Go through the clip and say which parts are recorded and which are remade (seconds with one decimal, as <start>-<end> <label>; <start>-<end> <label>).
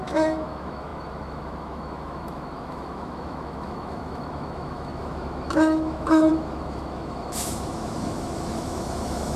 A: 0.0-9.4 remade